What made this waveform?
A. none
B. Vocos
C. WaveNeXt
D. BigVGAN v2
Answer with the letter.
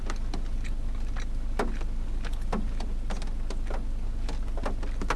A